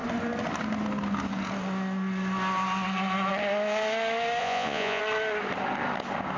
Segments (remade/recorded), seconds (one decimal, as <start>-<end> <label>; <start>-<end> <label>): 0.0-4.4 recorded; 4.4-5.0 remade; 5.0-6.4 recorded